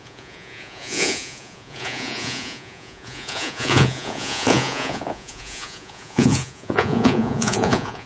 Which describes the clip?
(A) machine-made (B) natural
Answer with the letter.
A